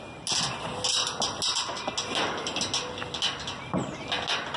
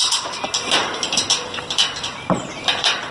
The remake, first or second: second